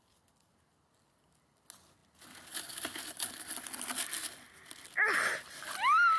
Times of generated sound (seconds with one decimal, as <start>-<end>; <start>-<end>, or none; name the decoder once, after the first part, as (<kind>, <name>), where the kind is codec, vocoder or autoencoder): none